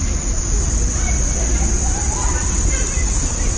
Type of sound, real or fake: real